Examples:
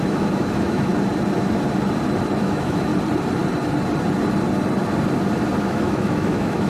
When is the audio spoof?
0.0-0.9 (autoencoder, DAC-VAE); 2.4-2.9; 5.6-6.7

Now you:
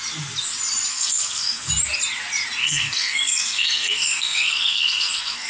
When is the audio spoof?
0.9-1.7 (codec, SNAC); 2.6-5.5

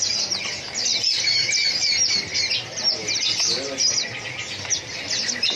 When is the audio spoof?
none